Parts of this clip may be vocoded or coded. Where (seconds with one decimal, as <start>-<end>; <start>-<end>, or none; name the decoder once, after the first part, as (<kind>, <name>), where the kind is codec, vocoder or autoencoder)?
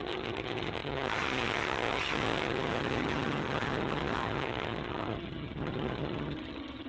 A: 0.0-6.9 (vocoder, HiFi-GAN)